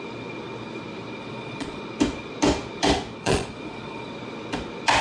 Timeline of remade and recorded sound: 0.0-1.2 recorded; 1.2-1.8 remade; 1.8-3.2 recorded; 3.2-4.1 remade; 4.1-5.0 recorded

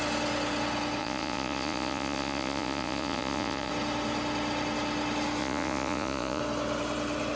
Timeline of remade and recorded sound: 0.0-1.0 recorded; 1.0-3.7 remade; 3.7-5.4 recorded; 5.4-6.4 remade; 6.4-7.4 recorded